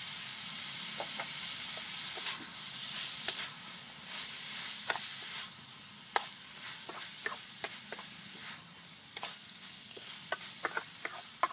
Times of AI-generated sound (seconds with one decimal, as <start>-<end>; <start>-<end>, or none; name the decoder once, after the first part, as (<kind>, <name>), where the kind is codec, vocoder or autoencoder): 9.3-10.1 (codec, SNAC)